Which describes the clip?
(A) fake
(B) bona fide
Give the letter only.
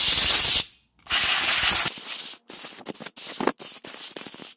B